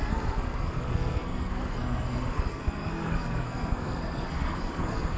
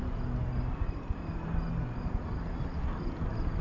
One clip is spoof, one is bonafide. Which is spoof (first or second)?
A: first